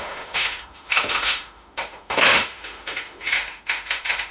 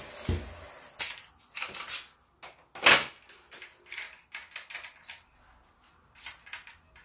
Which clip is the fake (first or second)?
first